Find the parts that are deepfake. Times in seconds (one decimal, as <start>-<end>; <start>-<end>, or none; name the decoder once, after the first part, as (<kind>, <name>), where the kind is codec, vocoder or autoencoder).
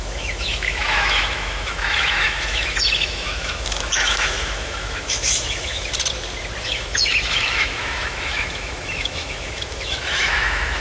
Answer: 0.0-5.9 (autoencoder, DAC-VAE); 6.6-10.8